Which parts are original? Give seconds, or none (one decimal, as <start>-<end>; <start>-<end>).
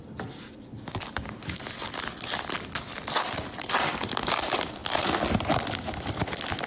0.0-6.7